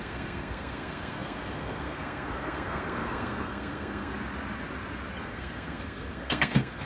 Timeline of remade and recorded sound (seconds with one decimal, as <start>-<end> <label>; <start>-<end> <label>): 0.0-4.1 remade; 4.1-5.2 recorded; 5.2-6.9 remade